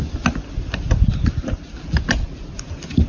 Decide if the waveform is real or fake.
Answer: real